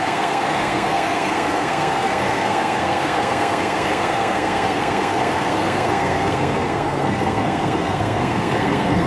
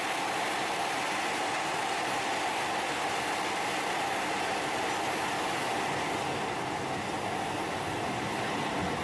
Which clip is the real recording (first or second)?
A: second